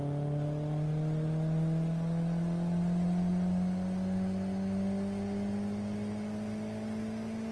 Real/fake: real